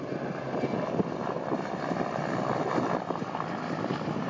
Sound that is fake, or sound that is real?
real